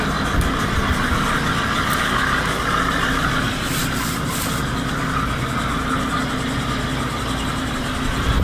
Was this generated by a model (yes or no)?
no